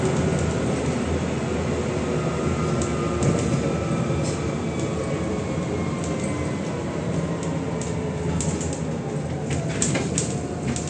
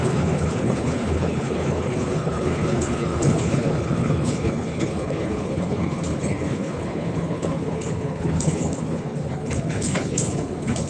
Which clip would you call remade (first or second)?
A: second